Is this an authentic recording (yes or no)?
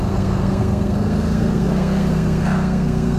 no